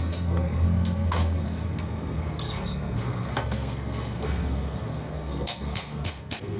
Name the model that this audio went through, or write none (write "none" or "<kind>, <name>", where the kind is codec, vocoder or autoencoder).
codec, SNAC